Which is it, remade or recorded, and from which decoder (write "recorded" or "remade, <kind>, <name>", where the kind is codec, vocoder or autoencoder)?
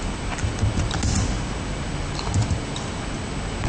recorded